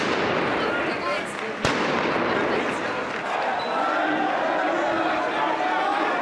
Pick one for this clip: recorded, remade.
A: recorded